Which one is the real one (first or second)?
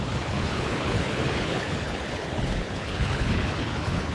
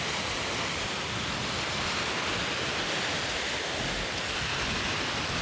second